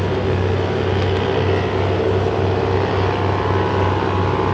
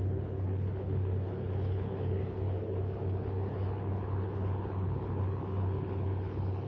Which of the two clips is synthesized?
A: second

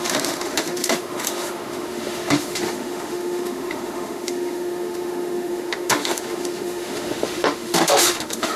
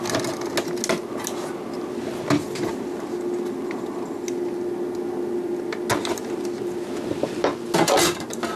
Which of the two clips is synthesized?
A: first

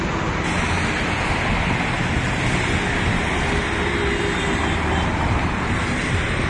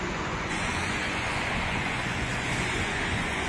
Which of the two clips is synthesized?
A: second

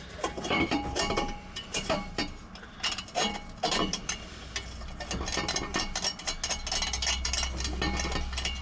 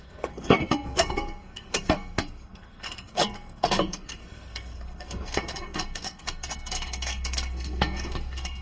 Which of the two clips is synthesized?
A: second